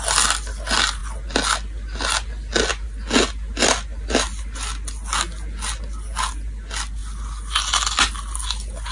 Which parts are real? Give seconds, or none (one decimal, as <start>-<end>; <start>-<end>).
0.0-8.9